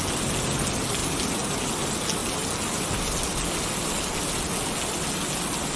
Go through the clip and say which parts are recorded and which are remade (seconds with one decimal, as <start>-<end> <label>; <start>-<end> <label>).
0.0-5.8 recorded